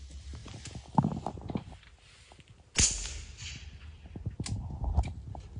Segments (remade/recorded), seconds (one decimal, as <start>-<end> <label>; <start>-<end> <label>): 0.0-5.6 recorded